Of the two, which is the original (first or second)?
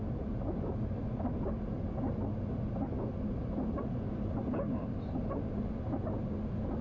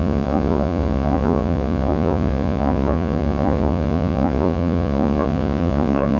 first